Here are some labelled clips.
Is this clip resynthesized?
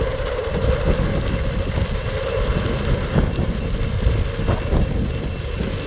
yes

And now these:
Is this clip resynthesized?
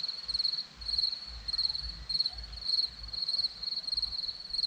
no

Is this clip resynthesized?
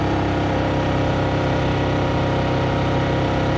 no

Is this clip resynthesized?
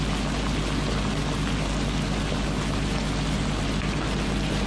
no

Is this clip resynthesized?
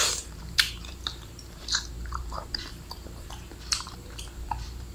yes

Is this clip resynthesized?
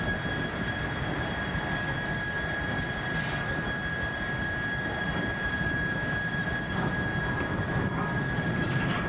no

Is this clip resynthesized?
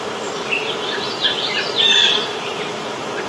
yes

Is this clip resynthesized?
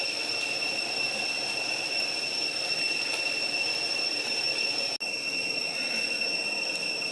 no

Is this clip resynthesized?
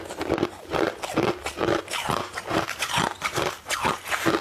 no